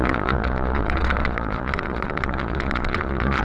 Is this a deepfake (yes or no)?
yes